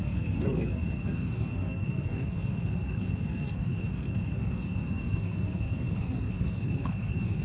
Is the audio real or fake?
fake